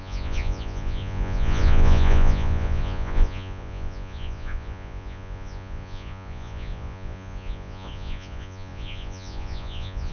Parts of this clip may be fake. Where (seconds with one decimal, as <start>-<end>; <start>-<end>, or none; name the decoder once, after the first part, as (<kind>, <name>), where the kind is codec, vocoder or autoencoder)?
0.0-10.1 (vocoder, Vocos)